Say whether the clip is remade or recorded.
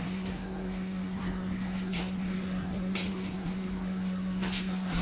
remade